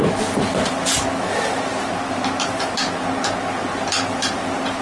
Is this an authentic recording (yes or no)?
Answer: yes